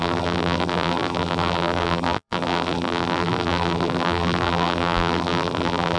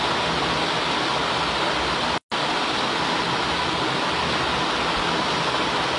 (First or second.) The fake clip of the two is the first